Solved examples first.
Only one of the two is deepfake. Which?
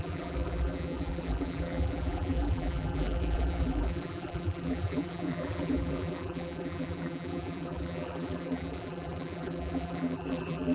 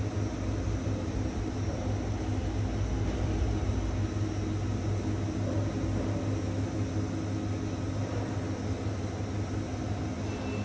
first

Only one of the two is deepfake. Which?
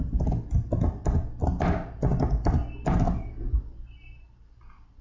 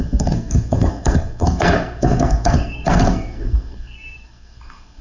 second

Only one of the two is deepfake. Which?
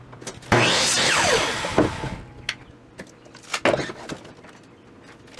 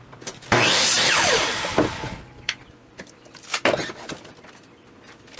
second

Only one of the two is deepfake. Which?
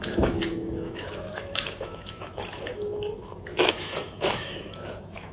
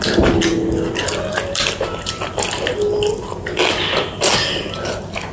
first